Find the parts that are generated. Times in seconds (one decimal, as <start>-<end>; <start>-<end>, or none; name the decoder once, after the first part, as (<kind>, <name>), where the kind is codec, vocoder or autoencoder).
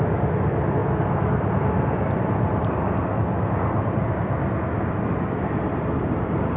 none